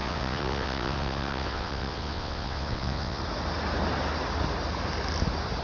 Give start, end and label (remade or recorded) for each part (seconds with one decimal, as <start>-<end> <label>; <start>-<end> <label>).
0.0-3.2 remade; 3.2-5.6 recorded